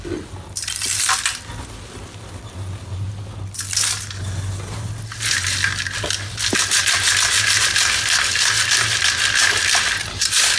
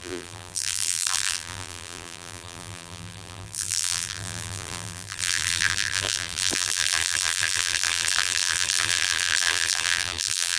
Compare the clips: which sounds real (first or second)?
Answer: first